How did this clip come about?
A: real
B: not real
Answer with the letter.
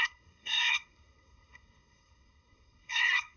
B